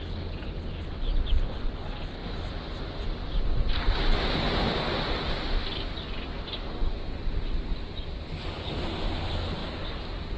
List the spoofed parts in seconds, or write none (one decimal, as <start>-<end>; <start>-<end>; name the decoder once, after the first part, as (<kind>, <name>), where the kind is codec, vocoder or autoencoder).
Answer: none